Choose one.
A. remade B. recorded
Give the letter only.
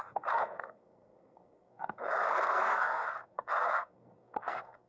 A